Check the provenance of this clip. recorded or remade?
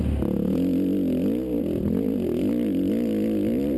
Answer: recorded